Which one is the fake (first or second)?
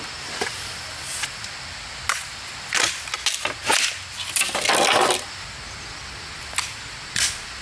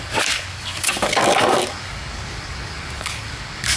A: second